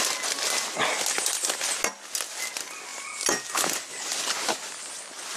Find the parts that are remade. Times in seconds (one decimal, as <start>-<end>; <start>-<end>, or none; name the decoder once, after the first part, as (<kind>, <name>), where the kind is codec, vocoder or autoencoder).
none